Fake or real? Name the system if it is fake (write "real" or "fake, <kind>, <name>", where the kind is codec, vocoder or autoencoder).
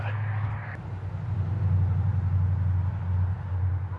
real